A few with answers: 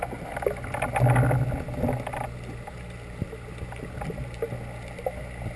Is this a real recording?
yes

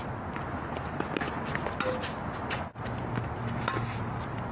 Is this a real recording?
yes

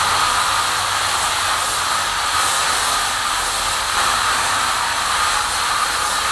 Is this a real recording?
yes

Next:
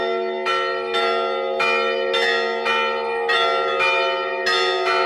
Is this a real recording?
yes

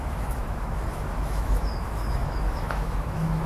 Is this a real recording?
no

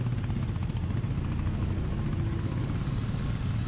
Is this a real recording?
yes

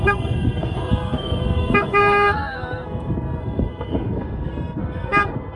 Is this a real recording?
no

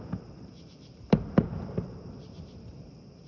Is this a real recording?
no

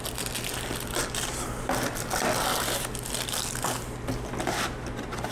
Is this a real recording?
yes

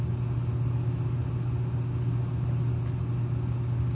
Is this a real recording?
yes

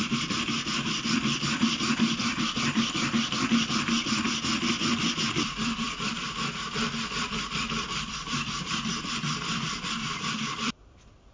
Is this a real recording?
no